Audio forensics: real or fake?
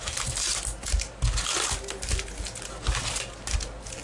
real